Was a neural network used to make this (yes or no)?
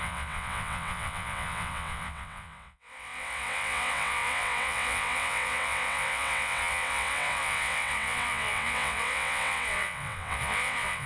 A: yes